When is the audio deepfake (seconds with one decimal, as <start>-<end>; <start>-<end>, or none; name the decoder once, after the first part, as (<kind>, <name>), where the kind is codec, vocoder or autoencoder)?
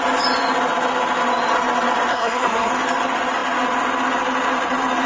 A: 2.1-2.7 (codec, SNAC)